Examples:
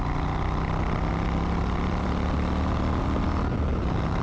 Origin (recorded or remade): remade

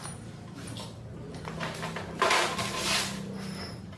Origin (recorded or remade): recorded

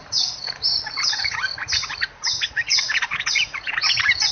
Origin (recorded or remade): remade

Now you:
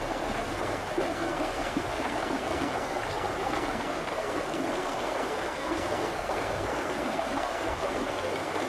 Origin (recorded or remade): remade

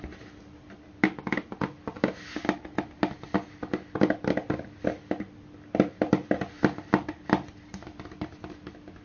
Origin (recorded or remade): recorded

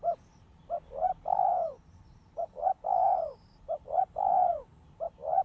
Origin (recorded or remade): recorded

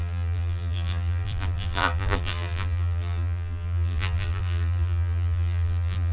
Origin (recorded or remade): remade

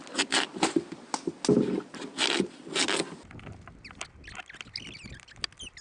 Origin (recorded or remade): recorded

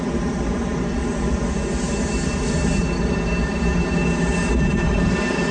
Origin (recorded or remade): recorded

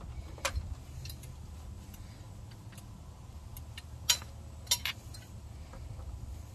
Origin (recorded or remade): recorded